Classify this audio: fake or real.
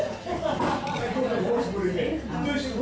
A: real